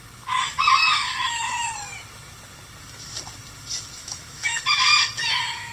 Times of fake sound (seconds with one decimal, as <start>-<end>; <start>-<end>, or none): 0.8-1.7; 4.0-4.6